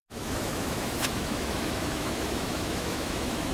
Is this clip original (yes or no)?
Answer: no